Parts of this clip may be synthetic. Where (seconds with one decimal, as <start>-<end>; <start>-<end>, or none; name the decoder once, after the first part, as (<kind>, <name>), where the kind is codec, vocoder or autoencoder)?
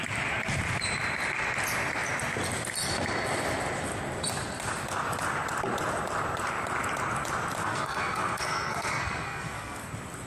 7.6-9.9 (codec, SNAC)